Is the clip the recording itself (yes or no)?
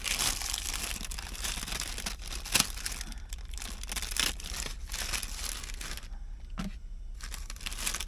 yes